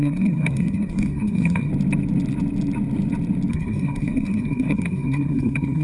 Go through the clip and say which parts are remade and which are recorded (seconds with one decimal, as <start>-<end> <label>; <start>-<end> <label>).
0.0-1.7 remade; 1.7-3.5 recorded; 3.5-5.8 remade